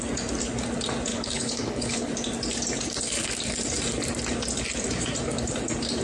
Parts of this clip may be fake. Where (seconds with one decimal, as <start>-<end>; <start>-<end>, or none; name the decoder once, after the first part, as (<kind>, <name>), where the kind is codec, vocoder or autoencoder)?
1.1-2.1 (codec, HILCodec)